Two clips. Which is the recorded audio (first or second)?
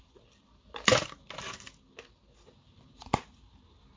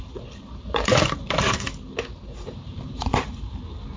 first